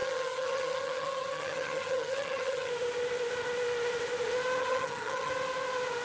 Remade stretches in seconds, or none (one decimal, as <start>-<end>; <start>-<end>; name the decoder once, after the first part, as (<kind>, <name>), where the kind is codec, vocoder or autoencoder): 0.0-2.7 (vocoder, HiFi-GAN); 4.6-5.3